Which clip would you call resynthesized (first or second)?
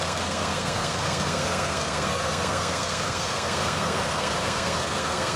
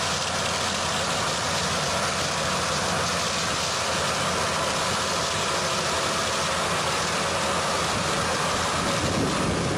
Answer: first